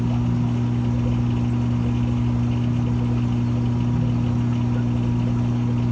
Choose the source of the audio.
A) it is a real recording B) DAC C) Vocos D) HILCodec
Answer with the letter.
A